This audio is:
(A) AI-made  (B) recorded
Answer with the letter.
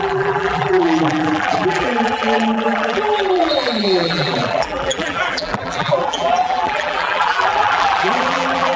A